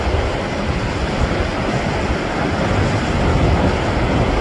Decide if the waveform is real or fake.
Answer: real